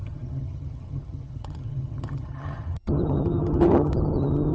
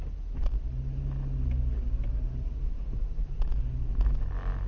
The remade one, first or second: first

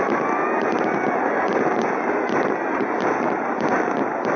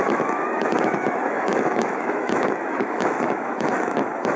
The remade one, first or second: second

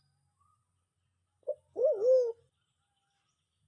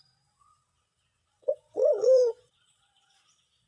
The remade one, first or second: second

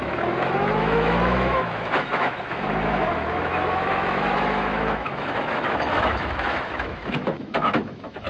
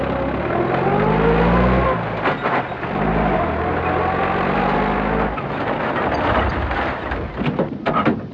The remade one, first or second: first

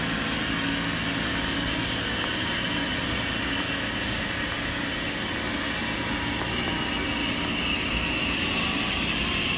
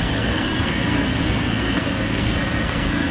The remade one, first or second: second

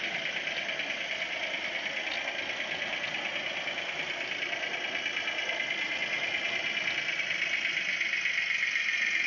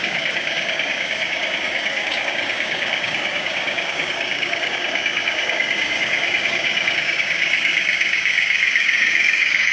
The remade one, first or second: second